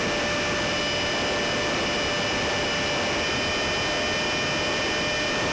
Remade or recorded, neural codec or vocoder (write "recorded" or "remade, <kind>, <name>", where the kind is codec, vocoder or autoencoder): recorded